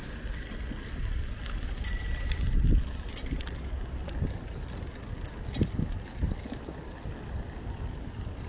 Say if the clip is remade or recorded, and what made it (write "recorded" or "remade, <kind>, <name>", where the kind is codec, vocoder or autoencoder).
recorded